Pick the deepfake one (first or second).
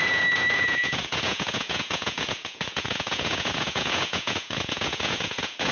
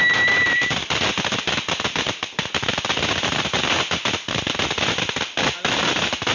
first